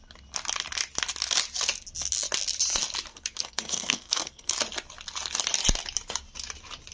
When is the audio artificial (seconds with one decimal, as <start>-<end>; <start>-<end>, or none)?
3.1-4.5